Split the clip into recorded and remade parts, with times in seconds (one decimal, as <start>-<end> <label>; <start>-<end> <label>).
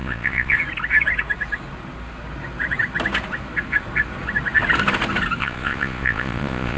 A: 0.0-0.6 remade; 0.6-5.4 recorded; 5.4-6.8 remade